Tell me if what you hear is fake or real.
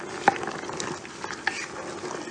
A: real